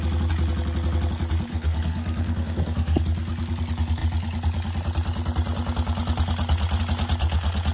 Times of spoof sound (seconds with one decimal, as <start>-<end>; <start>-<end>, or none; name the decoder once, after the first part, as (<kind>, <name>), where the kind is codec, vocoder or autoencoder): 1.5-3.0 (codec, SNAC)